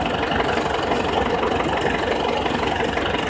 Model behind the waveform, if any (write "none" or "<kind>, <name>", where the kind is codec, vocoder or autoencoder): none